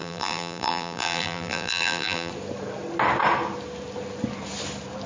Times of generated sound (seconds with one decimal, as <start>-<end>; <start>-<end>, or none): 0.0-2.3